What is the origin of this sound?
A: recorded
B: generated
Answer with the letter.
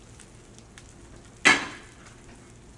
A